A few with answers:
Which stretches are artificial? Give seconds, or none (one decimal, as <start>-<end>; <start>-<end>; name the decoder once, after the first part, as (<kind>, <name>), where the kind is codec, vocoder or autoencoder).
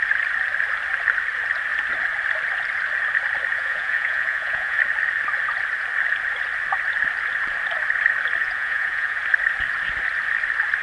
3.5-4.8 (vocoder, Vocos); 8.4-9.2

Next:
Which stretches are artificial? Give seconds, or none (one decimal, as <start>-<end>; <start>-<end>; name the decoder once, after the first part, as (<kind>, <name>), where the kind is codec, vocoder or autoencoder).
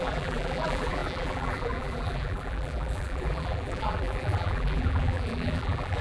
0.0-6.0 (vocoder, BigVGAN v2)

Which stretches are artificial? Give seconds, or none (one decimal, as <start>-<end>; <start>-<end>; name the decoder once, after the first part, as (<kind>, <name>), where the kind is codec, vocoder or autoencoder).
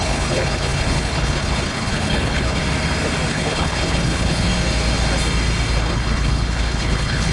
0.0-2.6 (codec, HILCodec); 3.3-4.5; 5.8-7.3